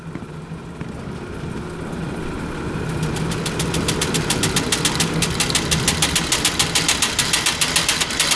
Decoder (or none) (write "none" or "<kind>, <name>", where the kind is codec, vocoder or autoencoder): none